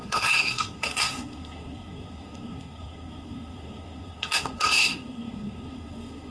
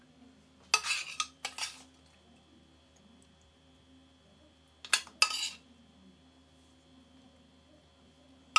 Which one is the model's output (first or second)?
first